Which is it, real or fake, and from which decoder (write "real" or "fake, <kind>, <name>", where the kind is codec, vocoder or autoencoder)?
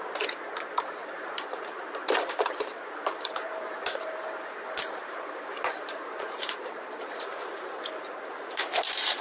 fake, vocoder, BigVGAN v2